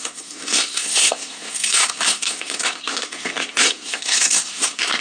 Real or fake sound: fake